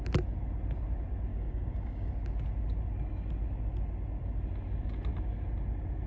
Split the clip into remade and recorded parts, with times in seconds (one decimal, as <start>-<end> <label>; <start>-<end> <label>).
0.0-1.3 recorded; 1.3-2.1 remade; 2.1-6.1 recorded